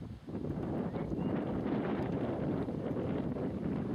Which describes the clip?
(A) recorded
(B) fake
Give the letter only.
A